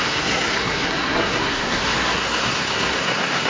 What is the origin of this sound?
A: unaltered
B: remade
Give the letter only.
B